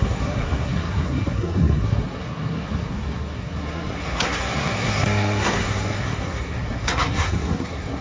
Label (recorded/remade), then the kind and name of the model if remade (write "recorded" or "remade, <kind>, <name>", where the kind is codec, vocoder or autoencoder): remade, codec, SNAC